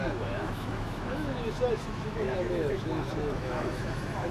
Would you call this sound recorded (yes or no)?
no